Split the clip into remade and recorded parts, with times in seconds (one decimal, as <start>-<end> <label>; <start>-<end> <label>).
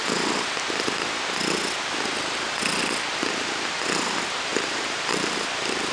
0.0-4.5 recorded; 4.5-5.5 remade; 5.5-5.9 recorded